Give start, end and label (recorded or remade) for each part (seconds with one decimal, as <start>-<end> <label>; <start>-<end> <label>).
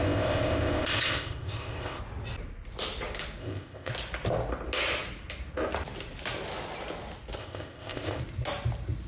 0.0-2.0 remade; 2.0-3.4 recorded; 3.4-3.9 remade; 3.9-7.4 recorded; 7.4-8.2 remade; 8.2-9.1 recorded